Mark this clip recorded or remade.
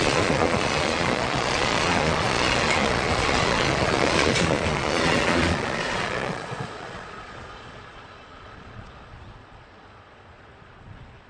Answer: remade